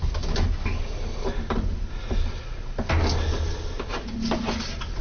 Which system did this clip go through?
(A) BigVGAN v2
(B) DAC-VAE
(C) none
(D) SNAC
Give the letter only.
C